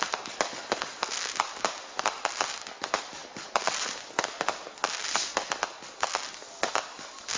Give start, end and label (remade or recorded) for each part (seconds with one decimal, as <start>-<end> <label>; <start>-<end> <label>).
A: 0.0-7.4 recorded